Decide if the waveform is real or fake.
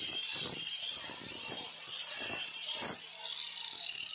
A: real